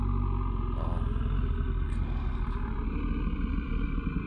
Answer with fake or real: real